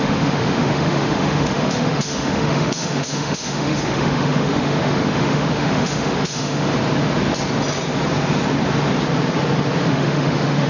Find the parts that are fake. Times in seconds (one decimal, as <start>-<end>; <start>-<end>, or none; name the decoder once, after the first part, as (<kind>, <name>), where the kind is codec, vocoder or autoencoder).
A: 0.0-6.7 (autoencoder, DAC-VAE); 9.9-10.7